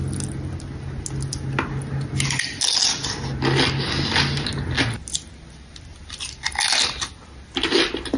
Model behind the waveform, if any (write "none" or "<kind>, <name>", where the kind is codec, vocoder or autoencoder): none